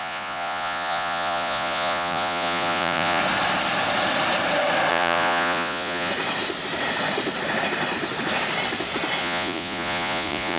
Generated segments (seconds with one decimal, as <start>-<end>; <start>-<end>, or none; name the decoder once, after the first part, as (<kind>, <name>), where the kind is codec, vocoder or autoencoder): 0.0-3.2 (vocoder, Vocos); 4.9-6.1; 9.2-10.6